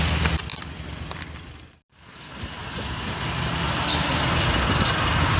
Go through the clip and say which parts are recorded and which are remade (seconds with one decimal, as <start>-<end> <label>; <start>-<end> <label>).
0.0-0.5 recorded; 0.5-1.2 remade; 1.2-5.4 recorded

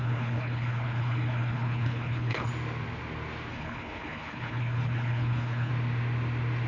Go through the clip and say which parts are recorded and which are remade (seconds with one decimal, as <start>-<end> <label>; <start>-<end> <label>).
0.0-2.5 remade; 2.5-3.5 recorded; 3.5-5.7 remade; 5.7-6.7 recorded

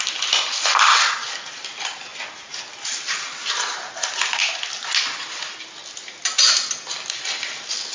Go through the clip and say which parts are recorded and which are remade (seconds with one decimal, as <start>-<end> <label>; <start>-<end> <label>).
0.0-7.9 recorded

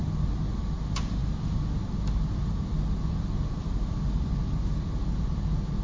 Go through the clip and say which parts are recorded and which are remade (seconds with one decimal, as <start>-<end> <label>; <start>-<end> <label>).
0.0-5.8 recorded

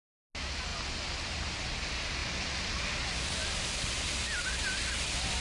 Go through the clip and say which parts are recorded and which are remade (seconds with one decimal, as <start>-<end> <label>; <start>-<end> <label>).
0.0-5.4 recorded

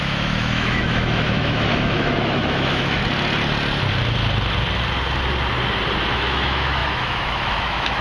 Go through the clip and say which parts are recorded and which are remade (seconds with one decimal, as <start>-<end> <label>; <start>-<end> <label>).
0.0-3.0 remade; 3.0-6.1 recorded; 6.1-8.0 remade

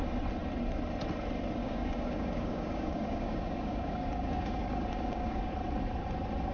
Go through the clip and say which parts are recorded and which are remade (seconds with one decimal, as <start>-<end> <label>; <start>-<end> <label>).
0.0-1.6 recorded; 1.6-5.5 remade; 5.5-6.5 recorded